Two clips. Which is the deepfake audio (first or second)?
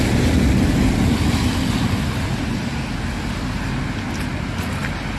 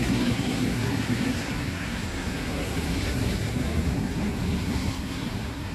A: second